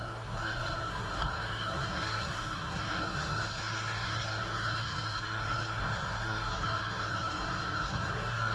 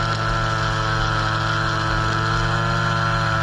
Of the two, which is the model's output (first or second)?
first